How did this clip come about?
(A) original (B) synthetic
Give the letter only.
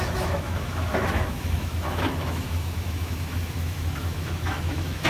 B